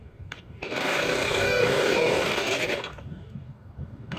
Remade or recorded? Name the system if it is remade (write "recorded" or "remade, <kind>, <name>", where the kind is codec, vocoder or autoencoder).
remade, codec, DAC